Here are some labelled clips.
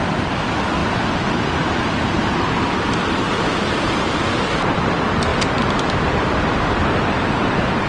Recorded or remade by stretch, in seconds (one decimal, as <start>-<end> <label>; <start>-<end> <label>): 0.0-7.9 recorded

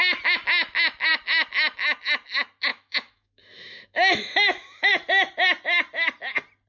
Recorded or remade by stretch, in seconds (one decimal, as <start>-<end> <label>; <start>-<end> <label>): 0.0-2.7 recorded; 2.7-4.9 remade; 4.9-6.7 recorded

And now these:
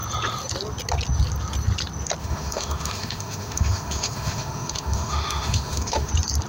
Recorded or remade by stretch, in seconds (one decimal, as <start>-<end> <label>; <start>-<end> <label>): 0.0-2.2 recorded; 2.2-6.1 remade; 6.1-6.5 recorded

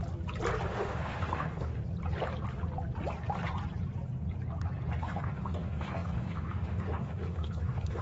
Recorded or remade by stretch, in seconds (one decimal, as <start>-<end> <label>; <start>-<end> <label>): 0.0-0.7 recorded; 0.7-1.8 remade; 1.8-5.0 recorded; 5.0-8.0 remade

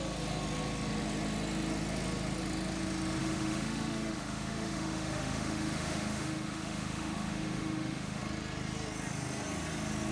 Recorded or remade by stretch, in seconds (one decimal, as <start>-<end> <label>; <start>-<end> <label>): 0.0-3.2 recorded; 3.2-8.2 remade; 8.2-10.1 recorded